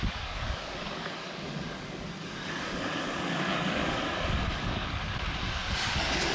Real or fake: fake